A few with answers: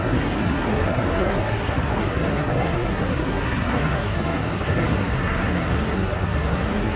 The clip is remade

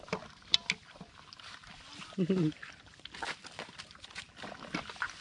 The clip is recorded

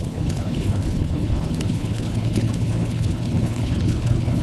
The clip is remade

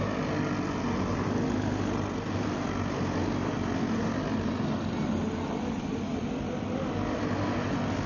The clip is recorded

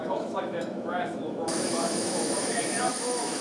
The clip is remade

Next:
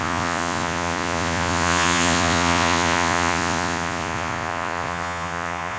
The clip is remade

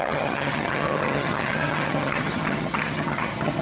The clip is remade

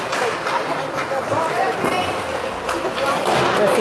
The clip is recorded